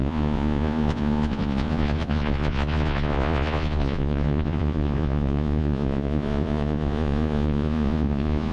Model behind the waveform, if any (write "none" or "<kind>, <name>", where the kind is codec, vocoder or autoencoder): vocoder, Vocos